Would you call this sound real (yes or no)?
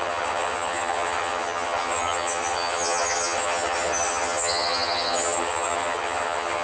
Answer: no